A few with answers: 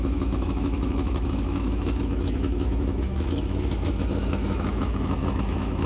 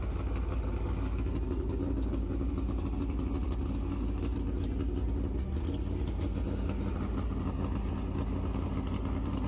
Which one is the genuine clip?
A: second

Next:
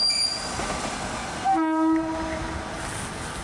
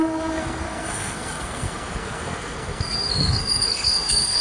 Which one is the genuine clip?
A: first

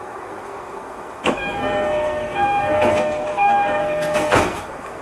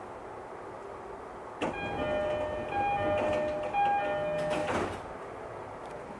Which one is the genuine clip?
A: second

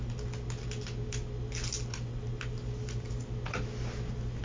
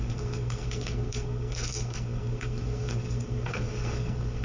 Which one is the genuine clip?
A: first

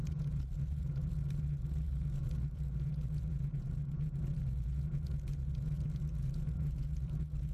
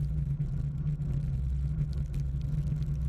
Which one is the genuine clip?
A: second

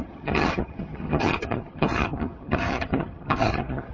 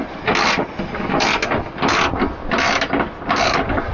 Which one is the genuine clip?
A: second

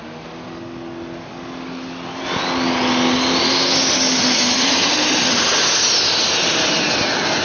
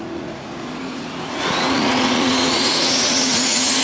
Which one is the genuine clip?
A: first